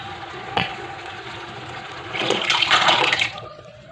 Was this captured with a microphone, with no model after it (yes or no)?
no